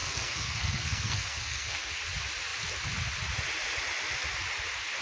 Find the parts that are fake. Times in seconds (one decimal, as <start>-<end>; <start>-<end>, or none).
0.0-2.0